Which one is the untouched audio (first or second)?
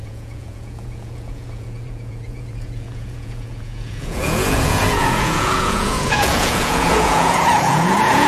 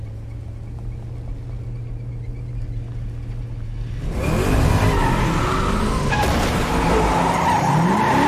second